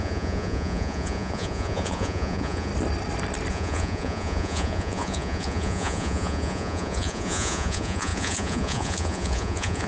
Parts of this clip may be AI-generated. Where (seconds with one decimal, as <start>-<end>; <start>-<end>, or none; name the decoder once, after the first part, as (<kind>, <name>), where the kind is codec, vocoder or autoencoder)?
0.0-2.7 (vocoder, Vocos); 3.5-9.9